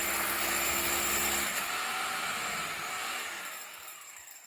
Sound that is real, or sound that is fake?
real